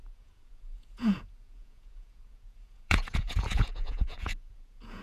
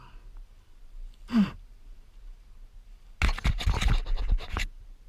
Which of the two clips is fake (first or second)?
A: first